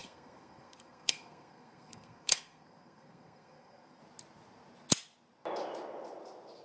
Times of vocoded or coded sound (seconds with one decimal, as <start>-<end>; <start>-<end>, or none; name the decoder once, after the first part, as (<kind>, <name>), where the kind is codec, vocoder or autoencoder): 0.0-4.0 (codec, SNAC)